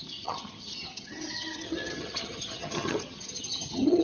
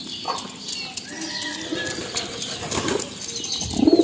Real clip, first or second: second